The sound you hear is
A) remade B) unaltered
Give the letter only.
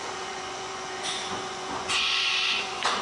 A